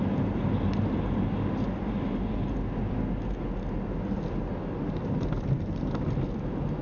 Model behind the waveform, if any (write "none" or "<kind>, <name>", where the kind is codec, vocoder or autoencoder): none